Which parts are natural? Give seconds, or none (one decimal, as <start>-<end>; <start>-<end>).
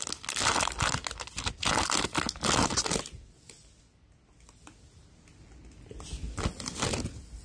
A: 0.0-7.4